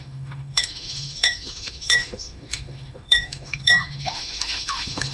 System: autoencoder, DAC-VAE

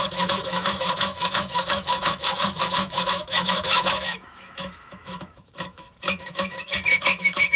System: autoencoder, DAC-VAE